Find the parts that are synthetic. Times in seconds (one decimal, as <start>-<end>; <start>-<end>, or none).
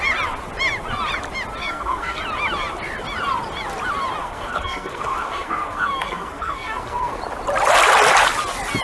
1.6-2.2; 4.2-7.2